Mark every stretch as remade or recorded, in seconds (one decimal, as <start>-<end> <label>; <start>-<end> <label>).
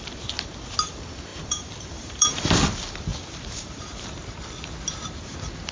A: 0.0-1.3 recorded; 1.3-2.6 remade; 2.6-3.1 recorded; 3.1-4.0 remade; 4.0-5.7 recorded